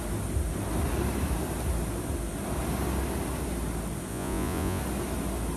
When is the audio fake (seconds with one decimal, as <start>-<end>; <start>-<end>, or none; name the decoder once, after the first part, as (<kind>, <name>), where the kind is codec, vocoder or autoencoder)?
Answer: 4.1-4.8 (vocoder, Vocos)